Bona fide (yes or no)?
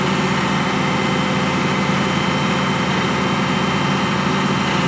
yes